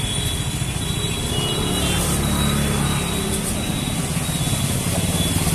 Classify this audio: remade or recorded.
recorded